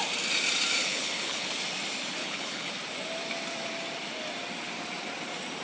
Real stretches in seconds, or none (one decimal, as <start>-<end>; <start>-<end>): 0.0-0.8; 1.5-2.2; 2.7-5.6